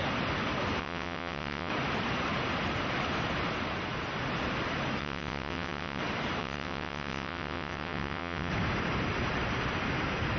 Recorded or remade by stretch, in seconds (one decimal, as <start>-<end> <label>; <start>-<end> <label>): 0.0-0.8 recorded; 0.8-1.7 remade; 1.7-5.0 recorded; 5.0-6.0 remade; 6.0-6.4 recorded; 6.4-8.5 remade; 8.5-10.4 recorded